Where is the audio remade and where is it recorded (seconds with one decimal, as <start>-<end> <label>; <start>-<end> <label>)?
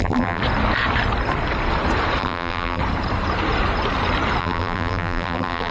0.0-0.4 remade; 0.4-2.2 recorded; 2.2-2.8 remade; 2.8-4.4 recorded; 4.4-5.7 remade